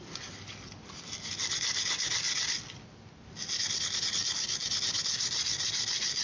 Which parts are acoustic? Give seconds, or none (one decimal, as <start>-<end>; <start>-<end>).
0.0-6.2